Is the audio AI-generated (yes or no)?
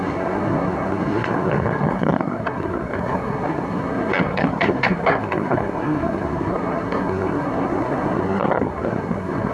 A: yes